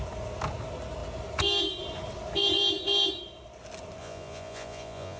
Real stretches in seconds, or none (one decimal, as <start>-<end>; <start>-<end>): 0.0-4.0